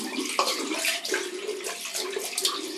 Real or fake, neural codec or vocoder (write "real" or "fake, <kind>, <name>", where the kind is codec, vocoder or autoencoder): real